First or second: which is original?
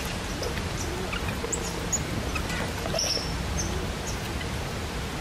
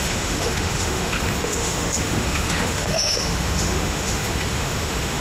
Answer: first